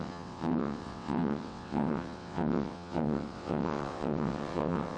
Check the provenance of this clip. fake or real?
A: fake